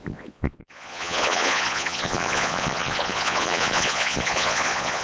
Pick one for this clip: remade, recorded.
remade